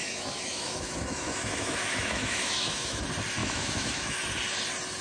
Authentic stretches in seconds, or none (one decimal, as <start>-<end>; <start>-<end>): 3.0-3.4; 4.2-5.0